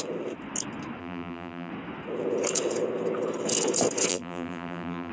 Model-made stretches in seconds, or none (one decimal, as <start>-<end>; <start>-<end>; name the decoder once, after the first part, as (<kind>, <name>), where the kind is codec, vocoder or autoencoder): 1.0-1.7 (vocoder, BigVGAN v2); 4.1-5.1